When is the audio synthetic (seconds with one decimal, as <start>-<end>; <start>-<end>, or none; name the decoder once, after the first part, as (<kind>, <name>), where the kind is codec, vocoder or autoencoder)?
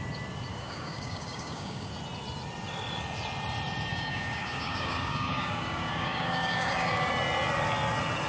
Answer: 0.5-1.9 (codec, DAC); 3.9-7.1